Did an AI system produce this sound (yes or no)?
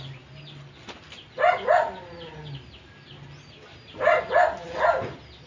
no